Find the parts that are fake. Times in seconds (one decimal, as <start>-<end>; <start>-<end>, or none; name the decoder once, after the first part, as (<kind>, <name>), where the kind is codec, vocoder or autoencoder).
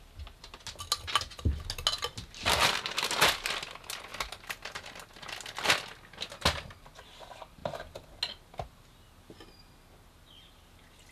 none